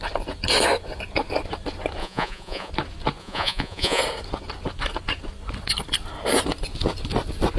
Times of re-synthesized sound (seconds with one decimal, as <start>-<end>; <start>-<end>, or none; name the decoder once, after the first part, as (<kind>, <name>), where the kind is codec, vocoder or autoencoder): 2.0-2.7 (vocoder, Vocos); 3.2-4.0